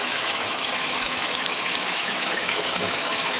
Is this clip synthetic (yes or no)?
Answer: yes